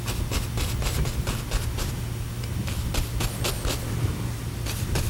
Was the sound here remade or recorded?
recorded